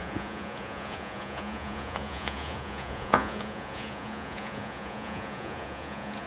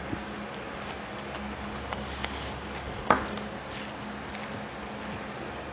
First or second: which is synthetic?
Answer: first